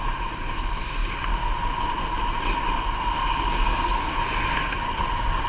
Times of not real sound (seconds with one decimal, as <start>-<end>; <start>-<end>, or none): 3.2-4.1